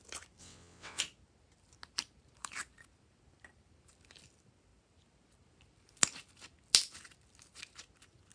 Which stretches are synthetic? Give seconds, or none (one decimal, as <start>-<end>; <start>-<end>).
0.4-1.0

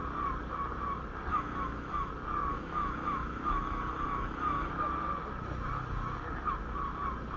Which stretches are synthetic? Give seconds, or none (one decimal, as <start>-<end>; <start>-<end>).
1.3-2.1; 2.5-4.7

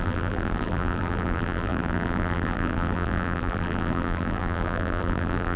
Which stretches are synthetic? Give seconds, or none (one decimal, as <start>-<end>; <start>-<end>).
0.0-5.6

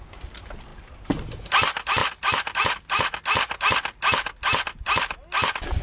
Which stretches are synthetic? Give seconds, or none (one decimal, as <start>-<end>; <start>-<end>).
none